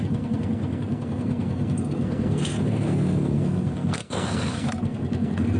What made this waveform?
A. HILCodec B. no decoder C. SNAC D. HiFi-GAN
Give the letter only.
C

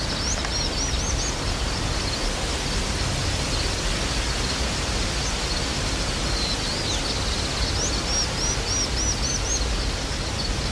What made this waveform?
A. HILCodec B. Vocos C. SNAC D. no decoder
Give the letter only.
D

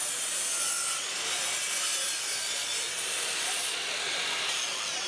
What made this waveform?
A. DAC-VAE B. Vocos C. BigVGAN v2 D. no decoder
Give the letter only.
D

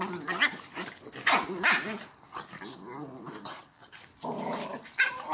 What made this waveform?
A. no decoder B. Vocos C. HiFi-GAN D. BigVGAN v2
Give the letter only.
A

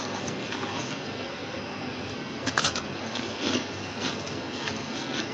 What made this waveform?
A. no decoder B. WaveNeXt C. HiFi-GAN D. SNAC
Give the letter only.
D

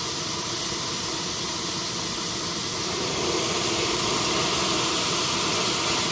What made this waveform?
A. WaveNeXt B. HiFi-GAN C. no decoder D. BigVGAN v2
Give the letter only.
C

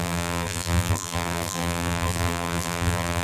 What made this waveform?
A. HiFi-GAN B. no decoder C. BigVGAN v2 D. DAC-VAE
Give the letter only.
C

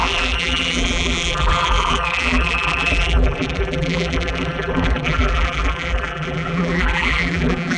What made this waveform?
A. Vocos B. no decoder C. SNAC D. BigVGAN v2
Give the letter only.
D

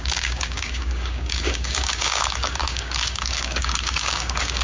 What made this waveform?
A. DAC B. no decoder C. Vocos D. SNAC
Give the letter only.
A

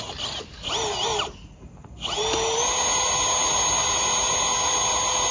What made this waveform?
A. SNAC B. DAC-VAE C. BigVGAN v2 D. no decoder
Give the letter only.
D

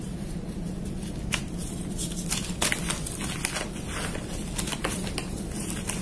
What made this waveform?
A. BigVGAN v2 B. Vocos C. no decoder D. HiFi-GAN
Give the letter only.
C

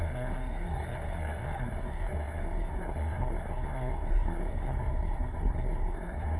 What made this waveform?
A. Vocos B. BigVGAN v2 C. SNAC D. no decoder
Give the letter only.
C